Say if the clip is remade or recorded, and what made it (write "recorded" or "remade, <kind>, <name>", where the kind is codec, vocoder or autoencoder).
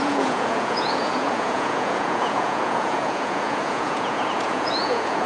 remade, vocoder, Vocos